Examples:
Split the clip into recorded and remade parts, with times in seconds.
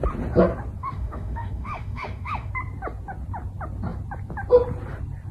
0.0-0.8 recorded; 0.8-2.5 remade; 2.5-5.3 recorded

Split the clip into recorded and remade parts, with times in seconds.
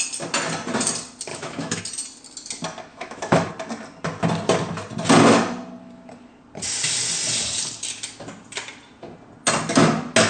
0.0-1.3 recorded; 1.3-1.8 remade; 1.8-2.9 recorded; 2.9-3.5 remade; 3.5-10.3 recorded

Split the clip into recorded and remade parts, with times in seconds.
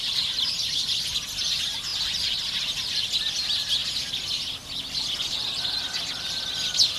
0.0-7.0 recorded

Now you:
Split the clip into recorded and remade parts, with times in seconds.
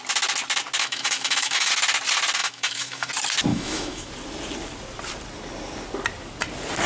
0.0-0.8 recorded; 0.8-1.7 remade; 1.7-2.4 recorded; 2.4-3.1 remade; 3.1-3.5 recorded; 3.5-4.1 remade; 4.1-6.9 recorded